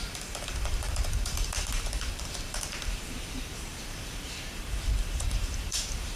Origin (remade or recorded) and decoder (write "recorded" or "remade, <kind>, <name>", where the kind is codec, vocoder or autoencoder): remade, vocoder, BigVGAN v2